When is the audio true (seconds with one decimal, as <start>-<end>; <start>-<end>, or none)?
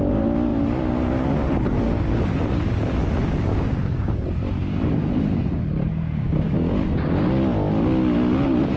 0.0-3.5; 4.1-5.9; 6.7-8.8